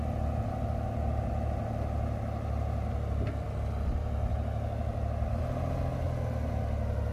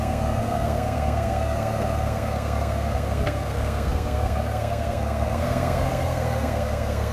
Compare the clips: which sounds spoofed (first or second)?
second